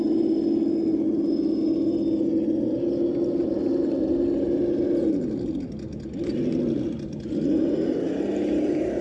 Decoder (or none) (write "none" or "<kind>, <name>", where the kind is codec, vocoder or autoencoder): none